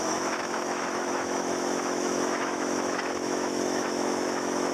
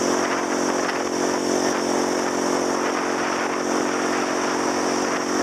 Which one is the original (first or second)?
second